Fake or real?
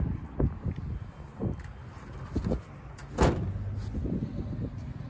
real